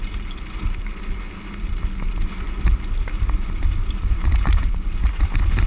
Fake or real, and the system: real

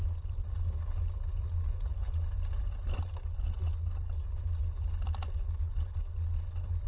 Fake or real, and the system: real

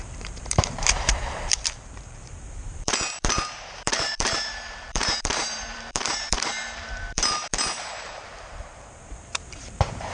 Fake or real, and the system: fake, vocoder, BigVGAN v2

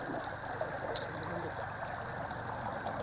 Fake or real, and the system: fake, vocoder, BigVGAN v2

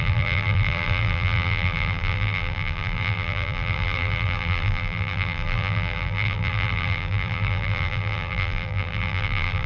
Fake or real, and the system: fake, vocoder, BigVGAN v2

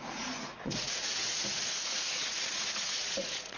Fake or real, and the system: fake, vocoder, Vocos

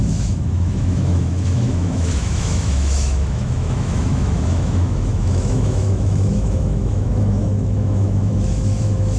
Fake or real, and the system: fake, autoencoder, DAC-VAE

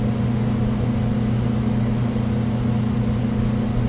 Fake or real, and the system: real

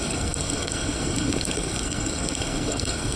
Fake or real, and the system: fake, codec, SNAC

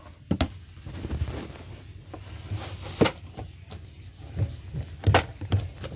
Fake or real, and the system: real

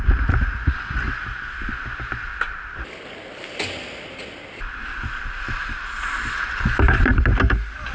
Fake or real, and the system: real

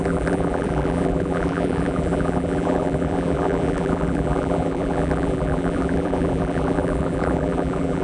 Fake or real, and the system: fake, vocoder, BigVGAN v2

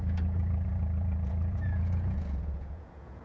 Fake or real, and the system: fake, vocoder, Vocos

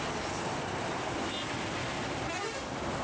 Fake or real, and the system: real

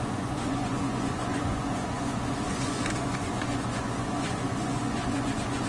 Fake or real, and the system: fake, vocoder, Vocos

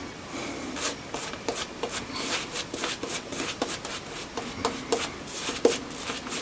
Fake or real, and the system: real